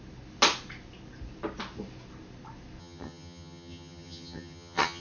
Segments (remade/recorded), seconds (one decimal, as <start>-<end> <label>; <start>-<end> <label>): 0.0-2.8 recorded; 2.8-5.0 remade